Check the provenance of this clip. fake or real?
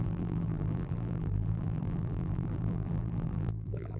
fake